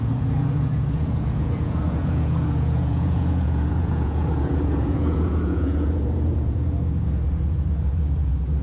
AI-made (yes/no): yes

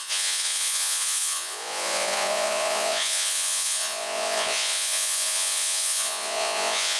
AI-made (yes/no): yes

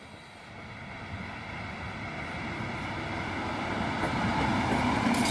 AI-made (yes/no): no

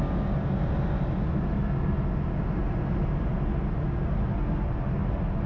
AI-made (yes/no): no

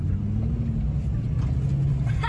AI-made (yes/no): no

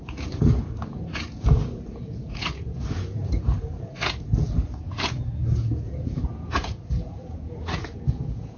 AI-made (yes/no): yes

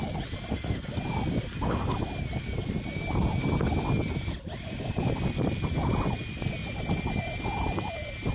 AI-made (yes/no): no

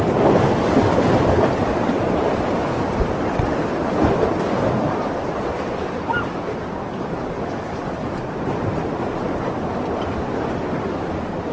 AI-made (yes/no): no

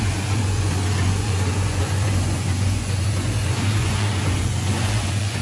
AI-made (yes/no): yes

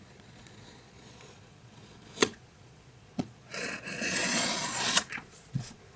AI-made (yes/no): yes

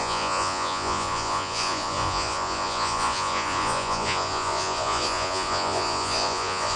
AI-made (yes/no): yes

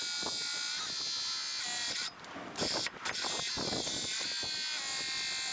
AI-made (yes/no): no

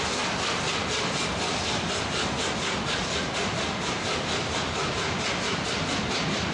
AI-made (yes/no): no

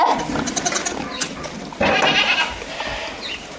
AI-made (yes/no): no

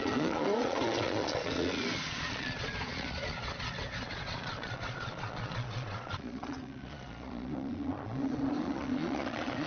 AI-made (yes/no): yes